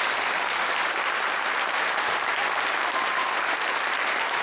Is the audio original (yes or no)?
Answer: yes